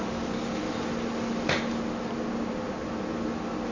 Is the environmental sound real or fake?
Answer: real